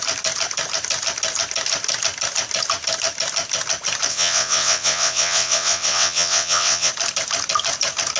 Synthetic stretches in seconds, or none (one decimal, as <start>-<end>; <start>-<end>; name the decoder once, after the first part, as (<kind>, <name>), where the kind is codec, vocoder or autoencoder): 4.1-6.9 (vocoder, WaveNeXt)